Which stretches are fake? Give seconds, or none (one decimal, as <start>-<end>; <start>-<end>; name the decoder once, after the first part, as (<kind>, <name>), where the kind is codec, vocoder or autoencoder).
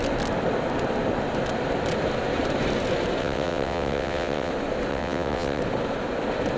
3.2-4.5 (vocoder, WaveNeXt); 4.9-5.6